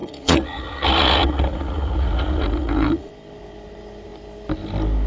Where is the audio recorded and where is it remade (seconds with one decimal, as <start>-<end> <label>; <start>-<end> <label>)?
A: 0.0-3.1 remade; 3.1-5.1 recorded